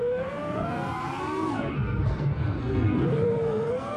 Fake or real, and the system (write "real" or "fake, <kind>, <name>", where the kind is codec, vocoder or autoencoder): fake, codec, SNAC